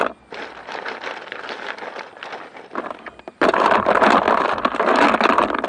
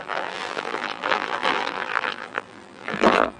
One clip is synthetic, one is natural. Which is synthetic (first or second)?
second